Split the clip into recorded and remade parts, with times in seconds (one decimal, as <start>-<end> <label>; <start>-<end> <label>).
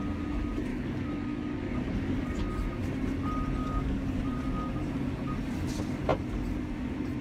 0.0-0.7 recorded; 0.7-2.4 remade; 2.4-3.6 recorded; 3.6-4.2 remade; 4.2-7.2 recorded